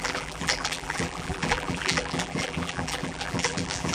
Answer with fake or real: fake